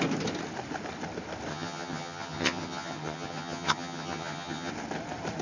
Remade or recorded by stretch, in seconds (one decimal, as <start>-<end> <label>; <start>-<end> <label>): 0.0-1.5 recorded; 1.5-4.7 remade; 4.7-5.4 recorded